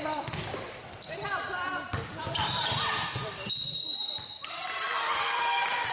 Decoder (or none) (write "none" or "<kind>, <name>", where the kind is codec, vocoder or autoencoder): vocoder, BigVGAN v2